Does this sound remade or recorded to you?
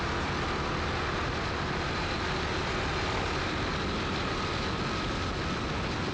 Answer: recorded